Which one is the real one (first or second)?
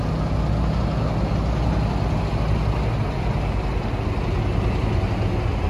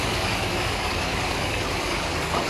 first